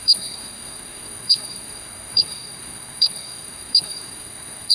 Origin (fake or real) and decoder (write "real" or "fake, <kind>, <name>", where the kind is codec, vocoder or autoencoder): fake, codec, SNAC